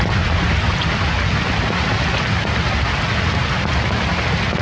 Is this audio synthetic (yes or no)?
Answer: no